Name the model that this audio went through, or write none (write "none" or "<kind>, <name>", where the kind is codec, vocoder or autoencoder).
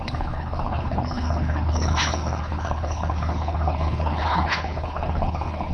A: codec, HILCodec